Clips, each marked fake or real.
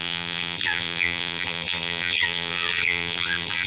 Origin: fake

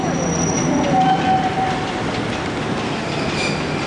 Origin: real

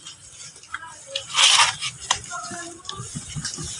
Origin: real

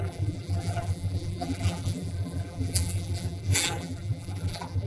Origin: fake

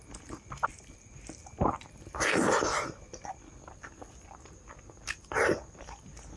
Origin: real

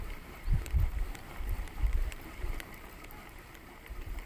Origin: fake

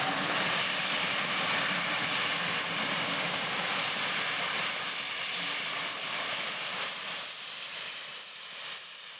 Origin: fake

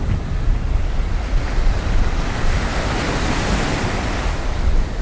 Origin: real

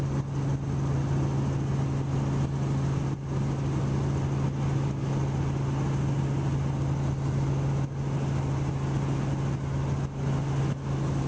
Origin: real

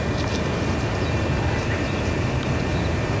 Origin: fake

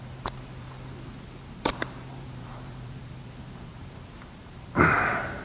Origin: fake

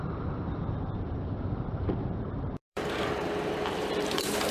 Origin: fake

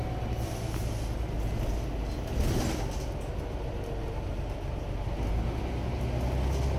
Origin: real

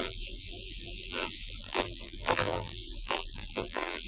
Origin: fake